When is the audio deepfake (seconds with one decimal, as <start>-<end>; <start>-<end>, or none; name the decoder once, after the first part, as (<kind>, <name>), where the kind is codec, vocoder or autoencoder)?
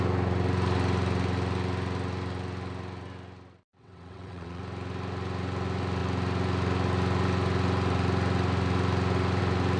3.8-4.6 (vocoder, WaveNeXt)